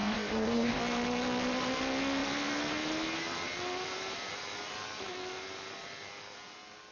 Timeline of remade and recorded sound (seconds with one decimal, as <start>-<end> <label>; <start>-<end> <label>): 0.0-0.8 remade; 0.8-6.9 recorded

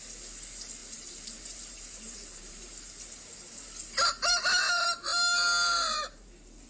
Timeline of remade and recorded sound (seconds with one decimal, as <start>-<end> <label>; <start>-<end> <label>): 0.0-0.8 recorded; 0.8-3.0 remade; 3.0-5.1 recorded; 5.1-6.3 remade; 6.3-6.7 recorded

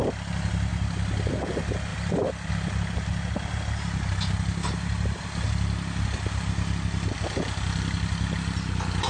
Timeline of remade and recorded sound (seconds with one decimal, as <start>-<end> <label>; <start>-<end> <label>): 0.0-1.9 recorded; 1.9-2.5 remade; 2.5-9.1 recorded